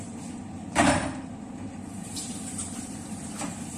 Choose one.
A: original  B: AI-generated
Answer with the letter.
B